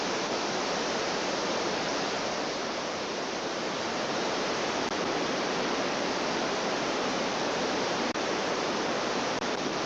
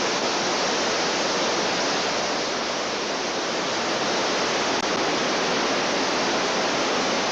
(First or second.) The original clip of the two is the second